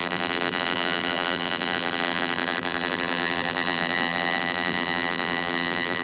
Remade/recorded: remade